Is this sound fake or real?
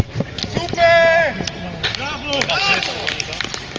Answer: real